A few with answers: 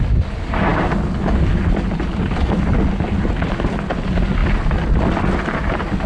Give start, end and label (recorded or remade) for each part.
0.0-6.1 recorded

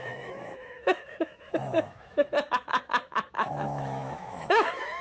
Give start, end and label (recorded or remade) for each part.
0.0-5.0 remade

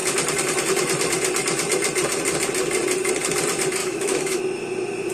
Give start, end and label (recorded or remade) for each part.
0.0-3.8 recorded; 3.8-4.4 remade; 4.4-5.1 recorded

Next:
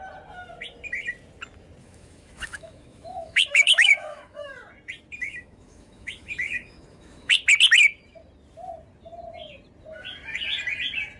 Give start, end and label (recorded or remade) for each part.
0.0-1.8 recorded; 1.8-4.5 remade; 4.5-5.2 recorded; 5.2-7.3 remade; 7.3-11.2 recorded